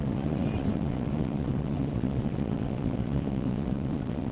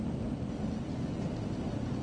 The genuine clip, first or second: second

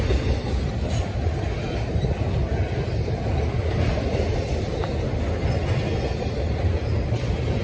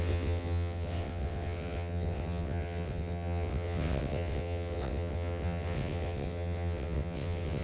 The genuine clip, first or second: first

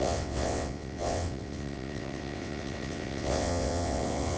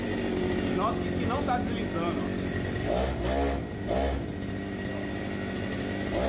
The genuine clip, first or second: second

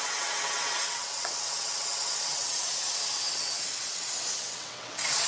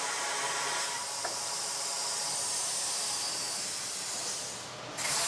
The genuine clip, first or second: second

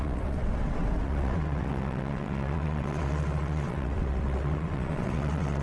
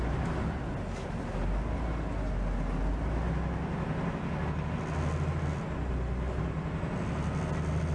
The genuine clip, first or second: second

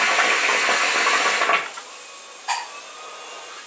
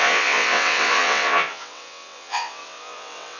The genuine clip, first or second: first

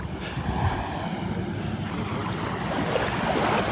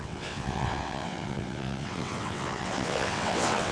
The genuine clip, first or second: first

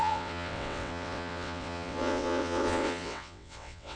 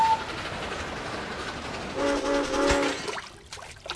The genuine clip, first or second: second